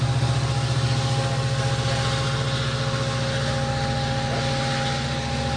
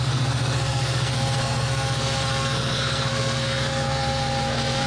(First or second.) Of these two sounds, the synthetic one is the second